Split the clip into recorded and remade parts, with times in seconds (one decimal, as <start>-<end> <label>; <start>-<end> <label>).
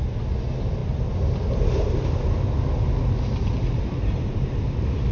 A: 0.0-5.1 recorded